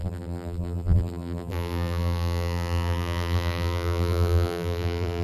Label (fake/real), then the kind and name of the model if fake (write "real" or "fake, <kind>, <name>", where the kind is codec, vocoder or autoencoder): fake, vocoder, BigVGAN v2